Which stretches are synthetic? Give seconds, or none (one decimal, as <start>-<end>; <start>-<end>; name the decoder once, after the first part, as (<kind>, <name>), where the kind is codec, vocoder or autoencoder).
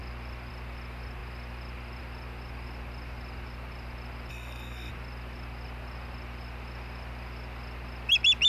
4.3-4.9 (codec, SNAC)